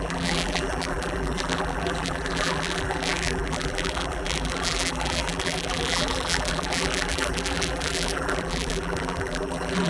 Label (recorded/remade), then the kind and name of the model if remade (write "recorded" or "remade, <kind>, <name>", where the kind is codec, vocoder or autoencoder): remade, vocoder, BigVGAN v2